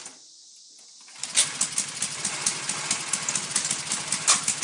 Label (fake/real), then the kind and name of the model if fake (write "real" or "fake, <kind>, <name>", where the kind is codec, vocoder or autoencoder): real